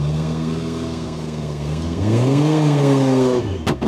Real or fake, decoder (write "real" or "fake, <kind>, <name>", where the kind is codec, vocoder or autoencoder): fake, codec, SNAC